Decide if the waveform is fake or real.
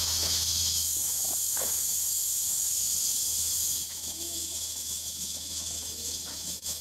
fake